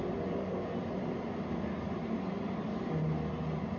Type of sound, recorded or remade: recorded